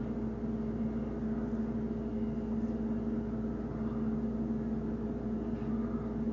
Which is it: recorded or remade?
recorded